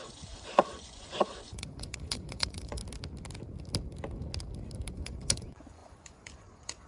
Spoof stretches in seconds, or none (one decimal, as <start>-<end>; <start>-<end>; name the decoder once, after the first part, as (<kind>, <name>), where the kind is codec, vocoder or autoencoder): 0.0-2.8 (vocoder, Vocos); 4.9-6.9

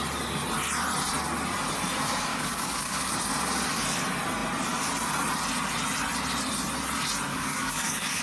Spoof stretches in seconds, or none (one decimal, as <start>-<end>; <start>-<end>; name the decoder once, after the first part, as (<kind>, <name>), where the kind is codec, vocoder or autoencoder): 2.3-3.1 (codec, DAC); 7.3-8.2